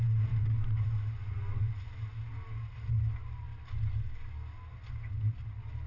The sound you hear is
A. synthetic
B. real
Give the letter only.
B